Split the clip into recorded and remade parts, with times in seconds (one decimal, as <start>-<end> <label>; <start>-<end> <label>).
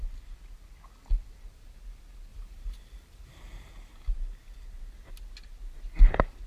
0.0-2.3 recorded; 2.3-3.7 remade; 3.7-6.5 recorded